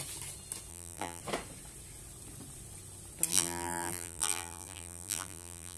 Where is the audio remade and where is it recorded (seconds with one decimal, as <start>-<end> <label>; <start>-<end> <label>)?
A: 0.0-0.7 recorded; 0.7-1.2 remade; 1.2-3.3 recorded; 3.3-5.8 remade

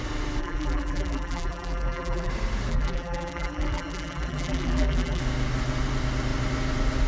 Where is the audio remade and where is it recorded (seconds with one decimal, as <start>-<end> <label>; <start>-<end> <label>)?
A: 0.0-0.4 recorded; 0.4-2.3 remade; 2.3-2.7 recorded; 2.7-5.2 remade; 5.2-7.1 recorded

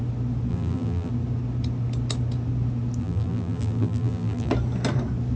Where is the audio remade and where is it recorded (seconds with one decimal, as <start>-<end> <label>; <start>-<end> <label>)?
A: 0.0-0.5 recorded; 0.5-1.1 remade; 1.1-3.0 recorded; 3.0-4.5 remade; 4.5-5.4 recorded